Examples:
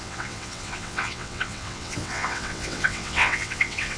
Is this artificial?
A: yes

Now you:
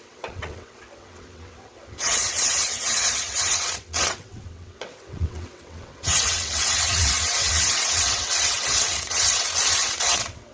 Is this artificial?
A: yes